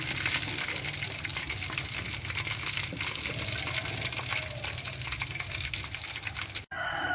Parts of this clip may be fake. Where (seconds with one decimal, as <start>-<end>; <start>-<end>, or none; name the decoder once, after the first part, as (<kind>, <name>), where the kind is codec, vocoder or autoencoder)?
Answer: none